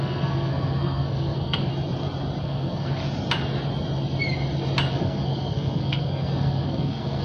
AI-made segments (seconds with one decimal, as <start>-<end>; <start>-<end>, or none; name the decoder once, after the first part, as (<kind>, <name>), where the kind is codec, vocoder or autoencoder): 0.0-1.7 (codec, SNAC); 2.4-3.0; 4.9-7.2